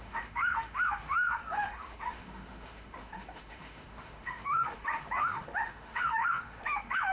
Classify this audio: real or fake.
fake